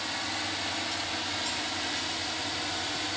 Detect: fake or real real